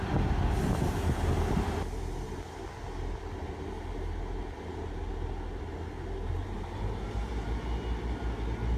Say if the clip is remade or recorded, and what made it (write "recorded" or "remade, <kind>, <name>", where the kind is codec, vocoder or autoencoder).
recorded